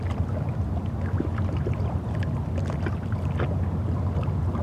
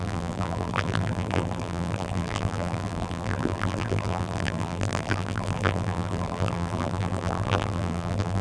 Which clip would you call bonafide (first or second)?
first